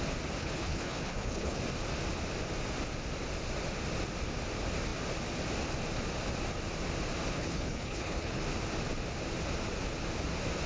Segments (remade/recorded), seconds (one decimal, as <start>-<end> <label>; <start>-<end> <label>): 0.0-0.4 recorded; 0.4-1.6 remade; 1.6-7.3 recorded; 7.3-8.4 remade; 8.4-10.7 recorded